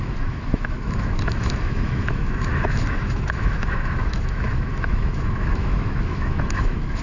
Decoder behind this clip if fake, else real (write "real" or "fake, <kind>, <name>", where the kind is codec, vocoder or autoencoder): fake, autoencoder, DAC-VAE